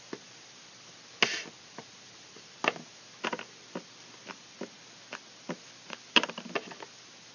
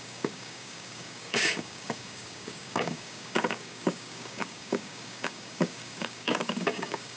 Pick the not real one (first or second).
second